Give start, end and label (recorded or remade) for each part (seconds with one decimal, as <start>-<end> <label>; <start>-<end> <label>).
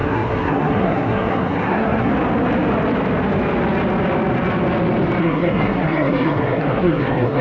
0.0-2.1 remade; 2.1-5.2 recorded; 5.2-7.4 remade